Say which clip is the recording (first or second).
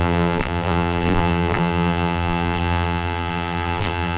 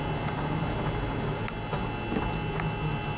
second